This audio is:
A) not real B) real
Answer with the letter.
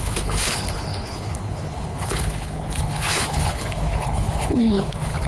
A